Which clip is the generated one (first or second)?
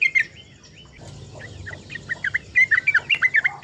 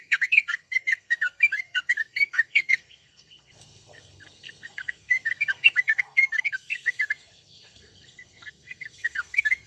second